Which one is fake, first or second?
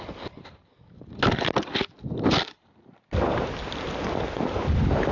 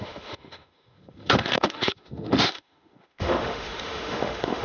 second